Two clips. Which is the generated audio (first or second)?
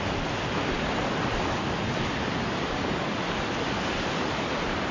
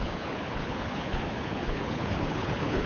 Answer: second